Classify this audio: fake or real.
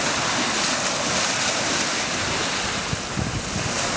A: real